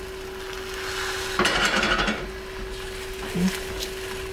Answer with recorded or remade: recorded